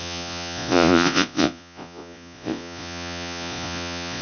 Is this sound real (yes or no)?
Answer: no